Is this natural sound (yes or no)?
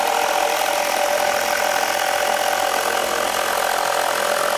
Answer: yes